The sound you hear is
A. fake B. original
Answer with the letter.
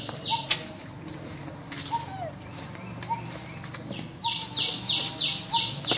B